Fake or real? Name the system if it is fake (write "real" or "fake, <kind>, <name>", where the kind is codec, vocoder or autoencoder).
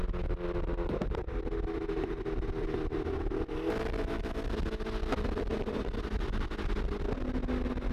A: real